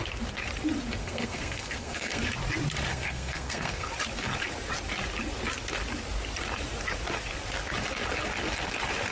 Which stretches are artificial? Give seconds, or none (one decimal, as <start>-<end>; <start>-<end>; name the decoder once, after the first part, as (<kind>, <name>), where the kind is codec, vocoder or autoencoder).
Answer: 1.0-2.2 (codec, SNAC); 2.9-3.9